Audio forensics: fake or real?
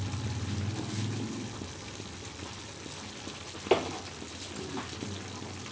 real